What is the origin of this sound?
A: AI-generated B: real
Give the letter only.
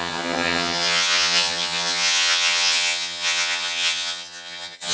A